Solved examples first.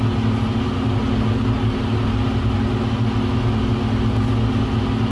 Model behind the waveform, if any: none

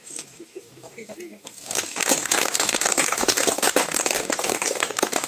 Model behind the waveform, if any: codec, DAC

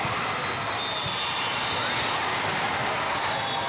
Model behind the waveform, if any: none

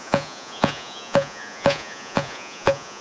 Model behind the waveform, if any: vocoder, Vocos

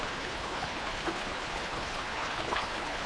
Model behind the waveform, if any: codec, HILCodec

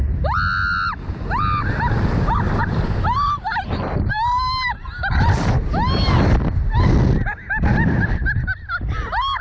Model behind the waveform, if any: none